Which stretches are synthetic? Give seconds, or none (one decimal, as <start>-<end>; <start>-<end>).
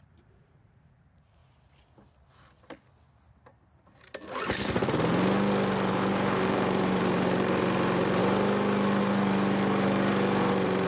0.0-1.4; 5.9-8.2; 9.0-10.9